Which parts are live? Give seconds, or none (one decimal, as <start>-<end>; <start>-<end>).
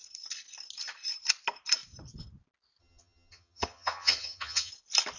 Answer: 0.0-2.8; 4.7-5.2